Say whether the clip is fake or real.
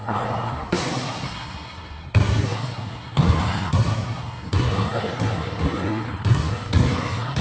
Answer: fake